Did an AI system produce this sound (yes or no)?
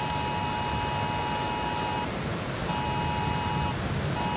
no